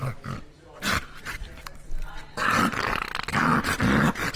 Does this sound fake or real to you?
real